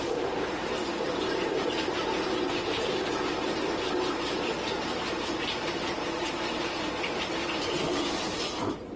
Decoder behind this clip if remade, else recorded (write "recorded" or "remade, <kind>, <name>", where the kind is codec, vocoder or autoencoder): remade, vocoder, BigVGAN v2